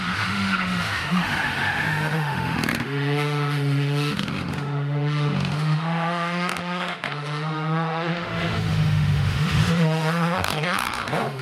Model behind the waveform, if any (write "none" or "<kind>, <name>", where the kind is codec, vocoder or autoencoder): autoencoder, DAC-VAE